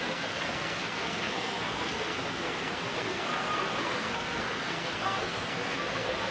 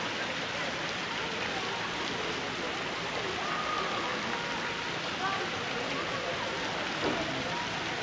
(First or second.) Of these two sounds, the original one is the second